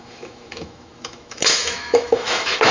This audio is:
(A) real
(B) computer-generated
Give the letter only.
B